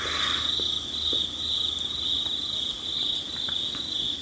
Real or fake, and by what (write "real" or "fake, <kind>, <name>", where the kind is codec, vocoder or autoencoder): real